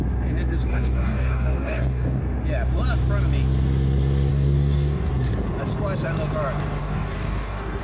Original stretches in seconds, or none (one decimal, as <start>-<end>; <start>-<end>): 0.0-0.7; 2.2-4.3; 5.1-6.8